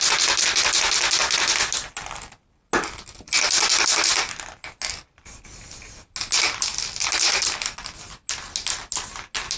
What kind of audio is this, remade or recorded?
recorded